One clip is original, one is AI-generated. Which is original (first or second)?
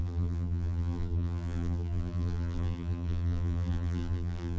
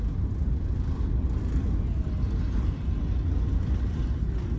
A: second